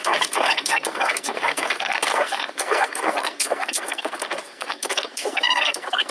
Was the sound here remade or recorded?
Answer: remade